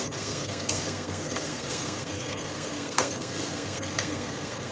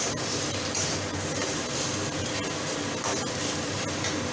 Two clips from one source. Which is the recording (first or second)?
second